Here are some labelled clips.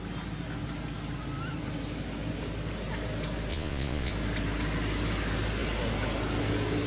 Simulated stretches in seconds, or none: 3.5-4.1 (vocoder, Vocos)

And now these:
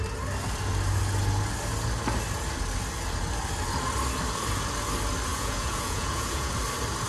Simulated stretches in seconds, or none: 5.3-6.5 (vocoder, Vocos)

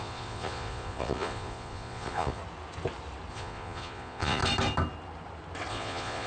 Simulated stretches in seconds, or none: 0.0-2.4 (vocoder, Vocos); 3.3-4.4; 5.7-6.3

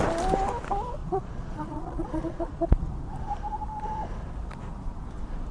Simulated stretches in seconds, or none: 1.0-2.9 (vocoder, Vocos)

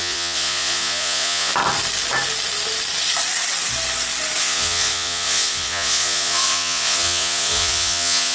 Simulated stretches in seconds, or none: 0.0-1.5 (vocoder, Vocos); 4.4-8.3

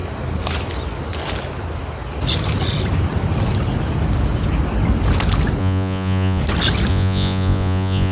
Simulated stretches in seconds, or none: 5.6-6.4 (vocoder, Vocos); 6.9-8.1